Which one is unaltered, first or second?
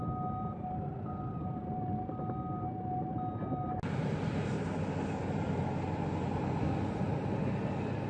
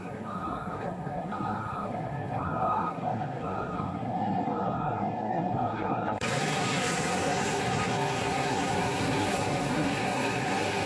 first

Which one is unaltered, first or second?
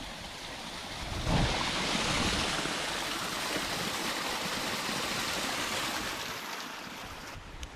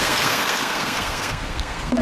first